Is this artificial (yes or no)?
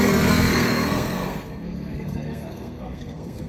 yes